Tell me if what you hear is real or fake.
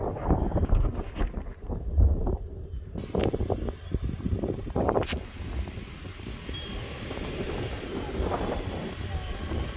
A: real